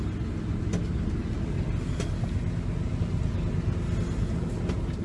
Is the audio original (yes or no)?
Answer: yes